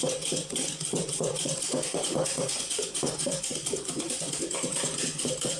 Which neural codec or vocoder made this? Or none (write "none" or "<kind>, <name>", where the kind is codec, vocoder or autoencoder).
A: vocoder, Vocos